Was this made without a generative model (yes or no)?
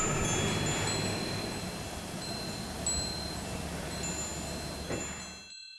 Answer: yes